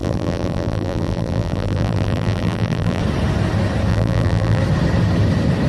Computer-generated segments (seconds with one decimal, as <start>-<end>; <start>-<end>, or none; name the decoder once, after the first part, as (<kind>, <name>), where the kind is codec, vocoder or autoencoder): 0.0-3.0 (vocoder, BigVGAN v2); 3.9-4.6

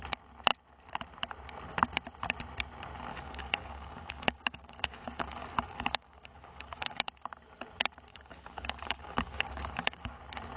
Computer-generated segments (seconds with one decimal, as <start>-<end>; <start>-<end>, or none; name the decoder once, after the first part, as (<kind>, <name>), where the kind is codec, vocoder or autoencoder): 3.1-7.1 (codec, DAC); 8.1-10.2

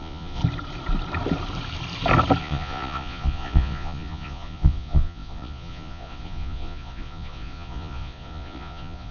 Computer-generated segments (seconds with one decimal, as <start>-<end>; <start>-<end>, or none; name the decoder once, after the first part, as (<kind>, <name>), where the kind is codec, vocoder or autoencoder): 0.0-0.4 (vocoder, Vocos); 2.4-9.1

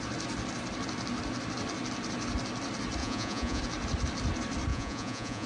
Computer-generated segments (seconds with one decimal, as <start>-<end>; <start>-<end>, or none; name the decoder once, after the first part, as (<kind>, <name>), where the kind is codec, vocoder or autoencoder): 3.0-3.6 (vocoder, Vocos); 4.7-5.5

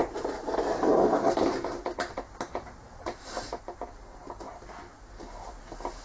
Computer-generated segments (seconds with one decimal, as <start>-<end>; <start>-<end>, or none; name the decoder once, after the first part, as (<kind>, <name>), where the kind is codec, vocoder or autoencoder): 0.0-3.6 (vocoder, BigVGAN v2)

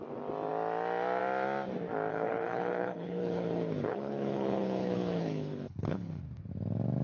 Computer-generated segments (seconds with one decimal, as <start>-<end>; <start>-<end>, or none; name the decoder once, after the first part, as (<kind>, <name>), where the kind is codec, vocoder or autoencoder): 2.1-6.2 (codec, HILCodec)

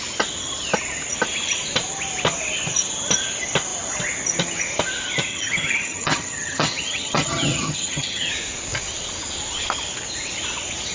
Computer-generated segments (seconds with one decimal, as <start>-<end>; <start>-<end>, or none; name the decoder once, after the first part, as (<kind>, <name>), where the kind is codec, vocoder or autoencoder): 5.3-8.3 (vocoder, HiFi-GAN)

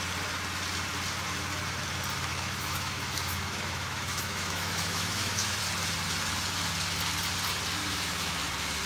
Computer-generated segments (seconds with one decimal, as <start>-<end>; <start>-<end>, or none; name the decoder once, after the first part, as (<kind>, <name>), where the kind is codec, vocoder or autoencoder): 2.3-5.6 (autoencoder, DAC-VAE); 7.8-8.4